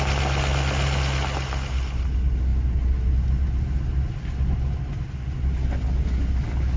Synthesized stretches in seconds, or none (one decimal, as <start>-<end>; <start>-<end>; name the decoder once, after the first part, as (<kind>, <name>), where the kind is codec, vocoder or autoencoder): none